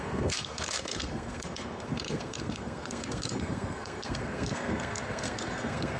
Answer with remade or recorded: remade